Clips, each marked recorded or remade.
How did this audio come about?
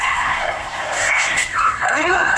remade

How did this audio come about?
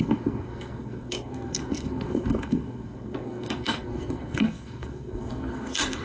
remade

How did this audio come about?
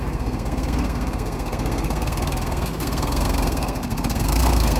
remade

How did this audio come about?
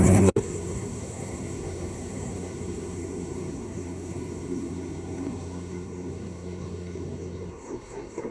remade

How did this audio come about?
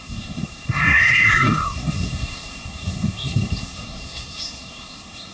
remade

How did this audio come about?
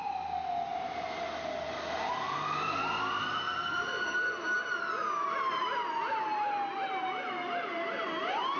recorded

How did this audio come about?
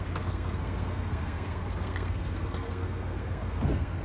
remade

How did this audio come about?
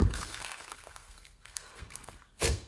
remade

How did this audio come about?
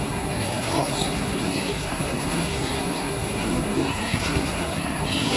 remade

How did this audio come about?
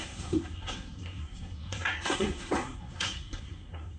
remade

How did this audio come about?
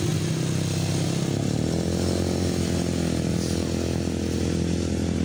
recorded